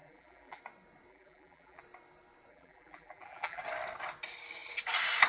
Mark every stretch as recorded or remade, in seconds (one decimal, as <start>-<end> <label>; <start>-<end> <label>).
0.0-0.6 remade; 0.6-1.1 recorded; 1.1-1.8 remade; 1.8-2.5 recorded; 2.5-3.6 remade; 3.6-5.3 recorded